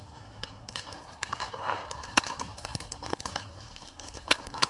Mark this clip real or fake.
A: fake